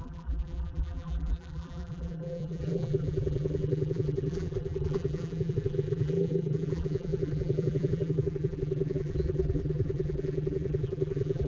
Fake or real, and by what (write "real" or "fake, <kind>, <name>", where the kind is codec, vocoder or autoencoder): fake, vocoder, BigVGAN v2